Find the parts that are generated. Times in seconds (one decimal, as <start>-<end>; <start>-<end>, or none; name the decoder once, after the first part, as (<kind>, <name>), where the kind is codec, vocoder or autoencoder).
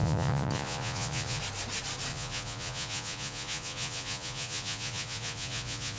0.0-1.4 (vocoder, Vocos); 2.1-6.0